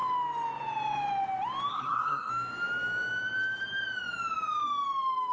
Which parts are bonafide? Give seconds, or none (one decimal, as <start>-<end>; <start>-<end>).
0.0-1.7; 2.3-5.3